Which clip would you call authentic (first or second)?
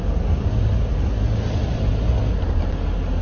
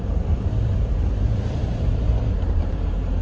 first